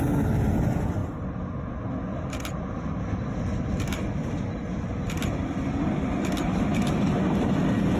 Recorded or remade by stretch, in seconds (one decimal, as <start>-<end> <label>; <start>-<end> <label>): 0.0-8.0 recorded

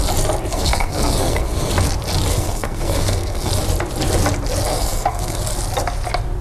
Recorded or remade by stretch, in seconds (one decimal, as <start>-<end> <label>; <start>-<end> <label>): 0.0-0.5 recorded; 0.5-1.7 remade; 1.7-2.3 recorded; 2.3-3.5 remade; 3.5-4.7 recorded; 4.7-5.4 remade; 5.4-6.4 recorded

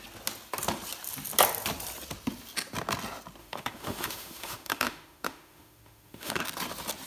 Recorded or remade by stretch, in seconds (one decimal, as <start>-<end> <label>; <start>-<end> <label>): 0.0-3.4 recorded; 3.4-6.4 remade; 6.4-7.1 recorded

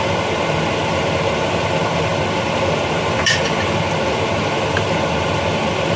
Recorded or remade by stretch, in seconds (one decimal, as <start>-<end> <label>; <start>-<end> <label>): 0.0-6.0 remade